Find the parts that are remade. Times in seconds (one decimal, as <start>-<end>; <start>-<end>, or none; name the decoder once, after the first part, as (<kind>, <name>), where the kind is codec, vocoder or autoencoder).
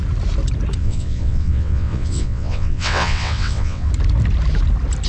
0.8-3.9 (vocoder, WaveNeXt)